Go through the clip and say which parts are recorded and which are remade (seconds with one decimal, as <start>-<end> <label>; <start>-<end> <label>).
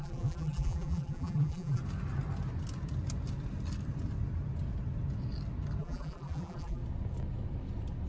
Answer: 0.0-1.8 remade; 1.8-5.8 recorded; 5.8-6.8 remade; 6.8-8.1 recorded